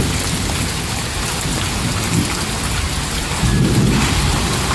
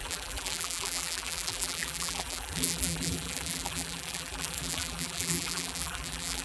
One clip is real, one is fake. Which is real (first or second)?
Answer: first